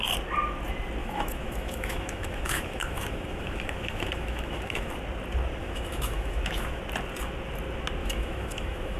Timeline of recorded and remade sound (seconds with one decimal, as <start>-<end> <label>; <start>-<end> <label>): 0.0-1.0 recorded; 1.0-4.9 remade; 4.9-5.6 recorded; 5.6-6.8 remade; 6.8-8.0 recorded; 8.0-9.0 remade